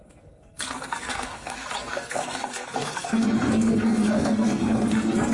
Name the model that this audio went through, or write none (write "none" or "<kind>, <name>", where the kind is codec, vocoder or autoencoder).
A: codec, SNAC